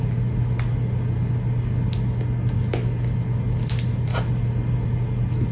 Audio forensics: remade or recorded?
recorded